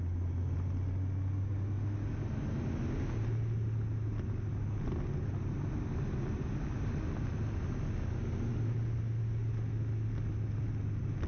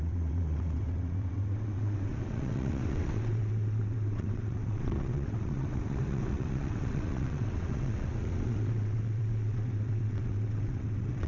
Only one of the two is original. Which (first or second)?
first